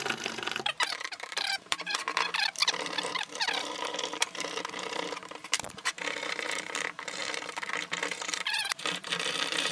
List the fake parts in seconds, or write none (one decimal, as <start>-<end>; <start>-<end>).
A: 0.0-9.7